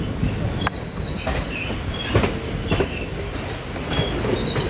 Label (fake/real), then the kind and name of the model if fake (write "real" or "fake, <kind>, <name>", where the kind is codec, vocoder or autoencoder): real